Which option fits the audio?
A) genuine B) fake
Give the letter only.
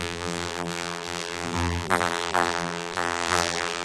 B